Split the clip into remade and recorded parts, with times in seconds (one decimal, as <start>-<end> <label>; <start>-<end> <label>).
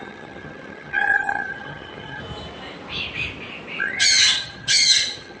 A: 0.0-2.2 remade; 2.2-3.8 recorded; 3.8-5.4 remade